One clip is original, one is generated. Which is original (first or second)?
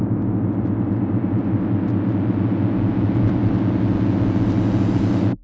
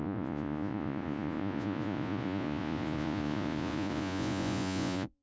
first